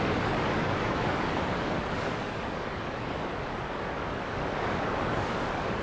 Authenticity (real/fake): fake